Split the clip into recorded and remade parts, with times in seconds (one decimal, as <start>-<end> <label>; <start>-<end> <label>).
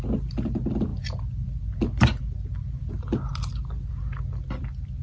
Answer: 0.0-5.0 recorded